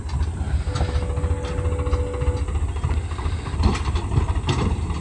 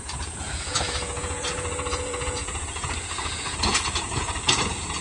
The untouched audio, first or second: first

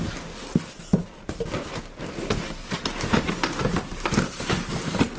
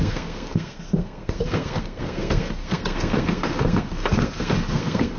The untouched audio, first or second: first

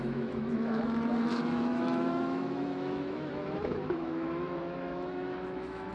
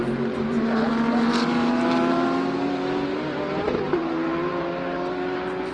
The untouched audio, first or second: second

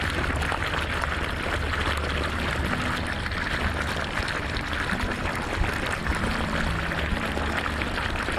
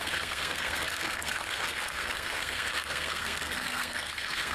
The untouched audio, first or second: first